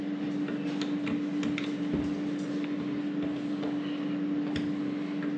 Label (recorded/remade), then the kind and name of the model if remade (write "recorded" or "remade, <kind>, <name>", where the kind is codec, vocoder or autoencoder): recorded